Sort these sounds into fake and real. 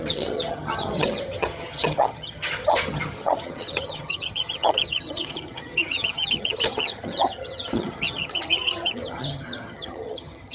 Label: fake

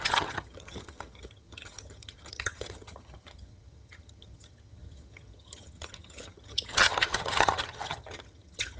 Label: fake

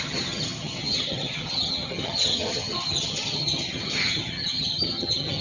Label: fake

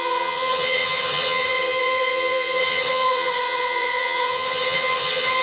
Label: fake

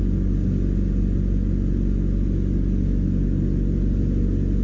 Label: real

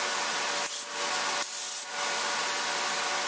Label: real